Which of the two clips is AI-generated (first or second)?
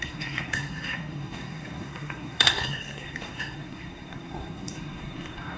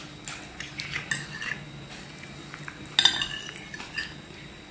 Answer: first